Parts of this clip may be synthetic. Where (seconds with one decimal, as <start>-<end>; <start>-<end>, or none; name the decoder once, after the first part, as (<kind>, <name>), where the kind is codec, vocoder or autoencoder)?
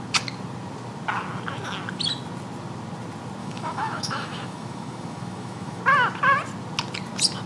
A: 3.4-5.8 (autoencoder, DAC-VAE)